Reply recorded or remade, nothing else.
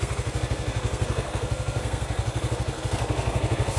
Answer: remade